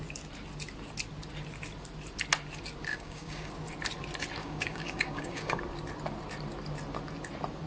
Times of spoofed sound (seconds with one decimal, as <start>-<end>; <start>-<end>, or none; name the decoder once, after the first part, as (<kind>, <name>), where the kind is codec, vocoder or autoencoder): 2.9-3.5 (codec, DAC); 4.4-5.6